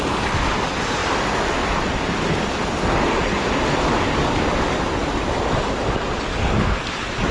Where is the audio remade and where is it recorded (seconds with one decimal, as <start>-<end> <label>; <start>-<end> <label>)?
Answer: 0.0-7.3 recorded